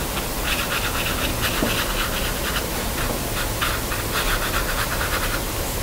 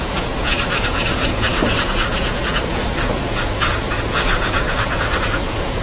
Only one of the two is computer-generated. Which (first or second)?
second